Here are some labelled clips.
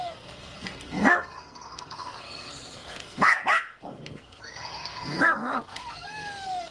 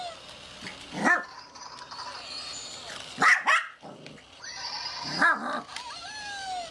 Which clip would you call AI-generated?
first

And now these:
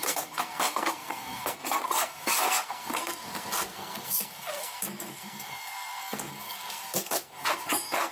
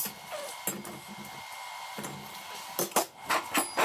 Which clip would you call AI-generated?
first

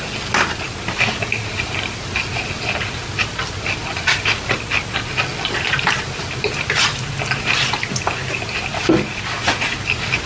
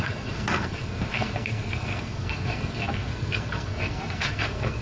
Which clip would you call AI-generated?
second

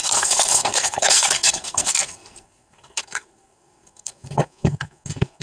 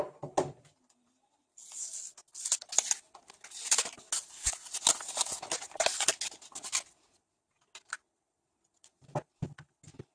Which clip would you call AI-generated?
first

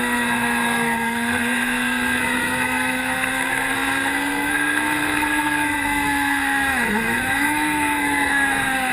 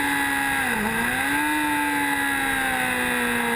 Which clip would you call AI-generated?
first